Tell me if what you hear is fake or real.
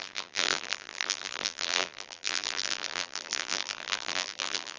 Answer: fake